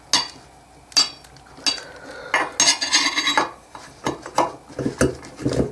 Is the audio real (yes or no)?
yes